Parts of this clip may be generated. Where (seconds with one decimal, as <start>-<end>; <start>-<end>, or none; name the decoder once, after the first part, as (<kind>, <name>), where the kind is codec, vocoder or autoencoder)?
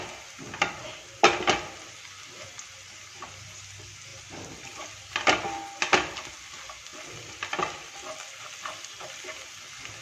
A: none